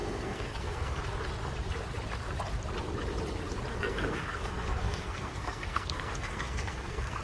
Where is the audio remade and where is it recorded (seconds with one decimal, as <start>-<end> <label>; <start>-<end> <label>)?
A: 0.0-1.0 remade; 1.0-3.7 recorded; 3.7-7.2 remade